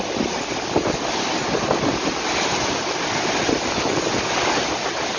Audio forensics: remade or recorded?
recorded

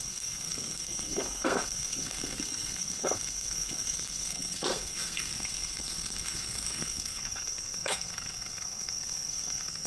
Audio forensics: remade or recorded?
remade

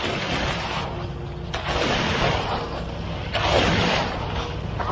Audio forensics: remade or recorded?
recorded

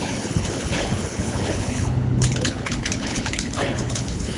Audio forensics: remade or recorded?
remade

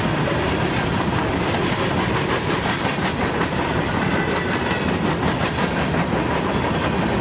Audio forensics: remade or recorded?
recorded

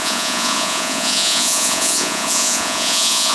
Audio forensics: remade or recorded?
remade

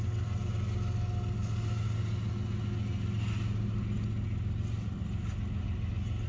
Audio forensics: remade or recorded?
recorded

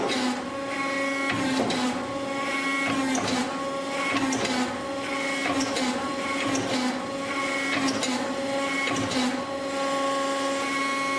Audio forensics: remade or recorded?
recorded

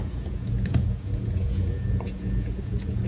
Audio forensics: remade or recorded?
remade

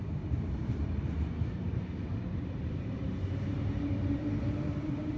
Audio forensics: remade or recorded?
remade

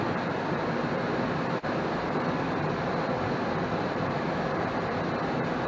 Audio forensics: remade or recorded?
recorded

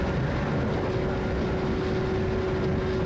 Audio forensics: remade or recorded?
recorded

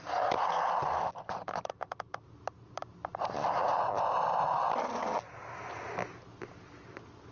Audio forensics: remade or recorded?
recorded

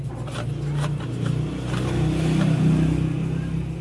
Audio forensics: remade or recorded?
recorded